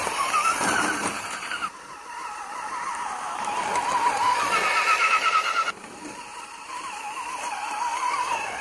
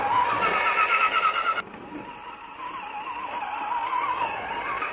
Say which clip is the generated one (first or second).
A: first